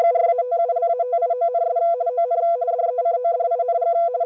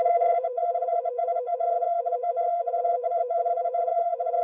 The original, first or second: first